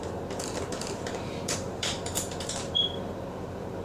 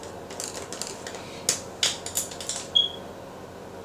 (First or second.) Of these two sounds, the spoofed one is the first